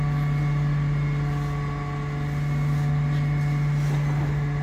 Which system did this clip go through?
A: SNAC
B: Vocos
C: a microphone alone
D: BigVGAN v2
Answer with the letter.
C